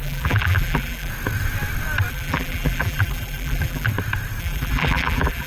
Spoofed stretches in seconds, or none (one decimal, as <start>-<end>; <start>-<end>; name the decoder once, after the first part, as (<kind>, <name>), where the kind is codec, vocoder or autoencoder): 0.0-1.1 (vocoder, BigVGAN v2); 2.1-3.9; 4.4-5.5